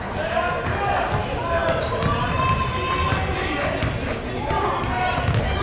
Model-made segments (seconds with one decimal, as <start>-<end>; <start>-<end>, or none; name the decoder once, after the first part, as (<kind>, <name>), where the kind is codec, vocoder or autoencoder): none